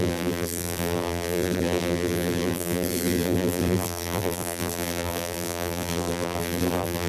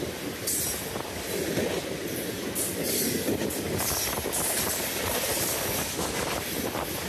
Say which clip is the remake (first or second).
first